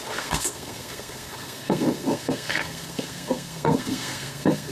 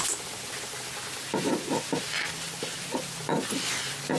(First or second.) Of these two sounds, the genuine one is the second